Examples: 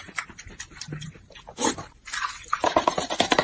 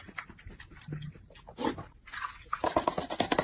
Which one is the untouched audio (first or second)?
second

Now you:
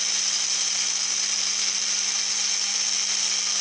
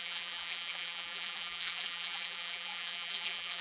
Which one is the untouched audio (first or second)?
first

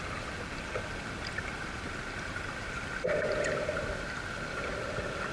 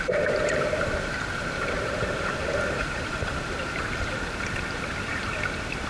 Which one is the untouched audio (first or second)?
first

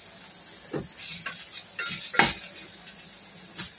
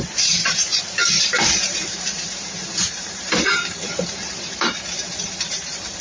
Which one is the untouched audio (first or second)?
first